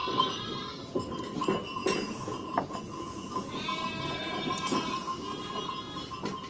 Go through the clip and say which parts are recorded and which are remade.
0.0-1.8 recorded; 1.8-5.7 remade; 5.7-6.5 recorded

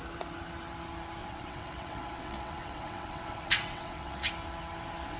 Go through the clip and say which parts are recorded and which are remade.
0.0-1.2 recorded; 1.2-4.3 remade; 4.3-5.2 recorded